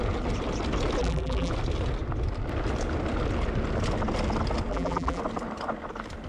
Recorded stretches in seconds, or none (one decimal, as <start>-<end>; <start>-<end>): 0.0-1.0; 1.5-4.7; 5.2-6.3